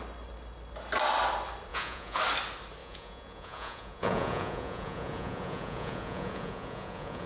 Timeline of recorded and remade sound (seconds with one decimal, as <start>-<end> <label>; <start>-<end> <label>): 0.0-1.7 recorded; 1.7-2.2 remade; 2.2-2.8 recorded; 2.8-7.3 remade